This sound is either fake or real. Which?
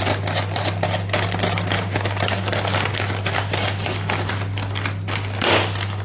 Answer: fake